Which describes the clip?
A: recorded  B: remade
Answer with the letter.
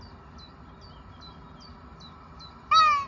A